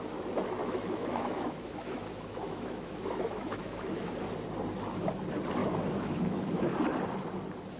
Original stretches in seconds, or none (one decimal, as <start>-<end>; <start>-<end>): 0.0-0.6; 4.1-5.6; 6.7-7.8